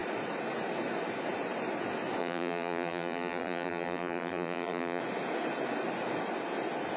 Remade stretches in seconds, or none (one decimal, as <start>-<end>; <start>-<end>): 2.2-5.0